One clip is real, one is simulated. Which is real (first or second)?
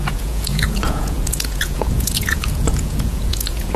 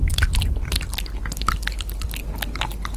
second